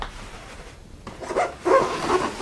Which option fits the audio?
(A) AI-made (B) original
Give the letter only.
B